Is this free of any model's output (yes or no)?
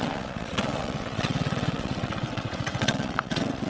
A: no